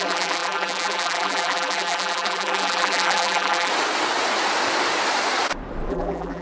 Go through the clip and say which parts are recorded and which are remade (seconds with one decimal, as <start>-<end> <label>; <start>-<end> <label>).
0.0-3.7 remade; 3.7-5.9 recorded; 5.9-6.4 remade